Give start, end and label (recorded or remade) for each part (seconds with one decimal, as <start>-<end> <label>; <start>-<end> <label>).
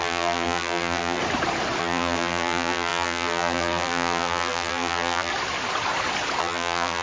0.0-1.2 remade; 1.2-1.8 recorded; 1.8-5.3 remade; 5.3-6.4 recorded; 6.4-7.0 remade